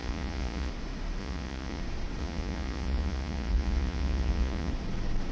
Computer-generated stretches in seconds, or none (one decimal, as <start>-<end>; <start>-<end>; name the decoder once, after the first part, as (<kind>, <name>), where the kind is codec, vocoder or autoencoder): 0.0-0.7 (vocoder, Vocos); 1.2-1.8; 2.2-4.7